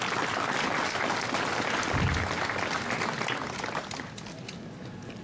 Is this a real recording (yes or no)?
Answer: yes